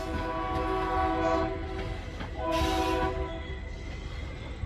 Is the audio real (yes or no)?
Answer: yes